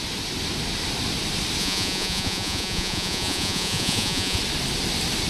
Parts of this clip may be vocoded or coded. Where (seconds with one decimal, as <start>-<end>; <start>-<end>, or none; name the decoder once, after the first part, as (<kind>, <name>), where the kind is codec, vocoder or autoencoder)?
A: 1.6-4.4 (vocoder, Vocos)